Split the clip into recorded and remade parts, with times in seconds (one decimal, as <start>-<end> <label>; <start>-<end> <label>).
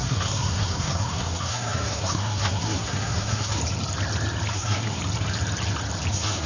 0.0-3.6 remade; 3.6-4.5 recorded; 4.5-5.0 remade; 5.0-6.1 recorded; 6.1-6.5 remade